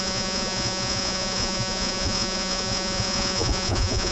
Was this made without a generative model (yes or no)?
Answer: no